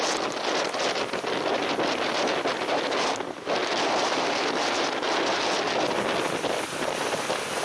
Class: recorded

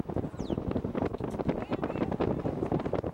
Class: recorded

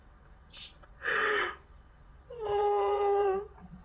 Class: remade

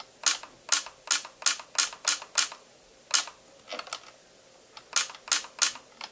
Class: recorded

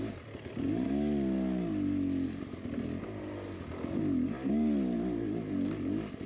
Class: recorded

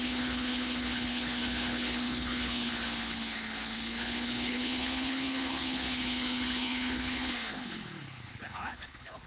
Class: remade